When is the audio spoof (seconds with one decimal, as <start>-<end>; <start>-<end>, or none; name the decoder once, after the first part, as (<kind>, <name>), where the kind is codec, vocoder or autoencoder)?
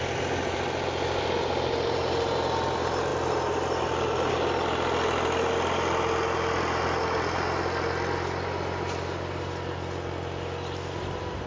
none